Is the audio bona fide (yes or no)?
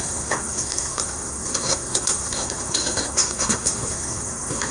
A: no